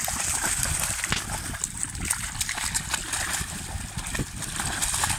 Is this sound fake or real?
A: real